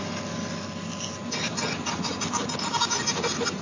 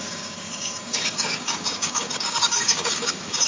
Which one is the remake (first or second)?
second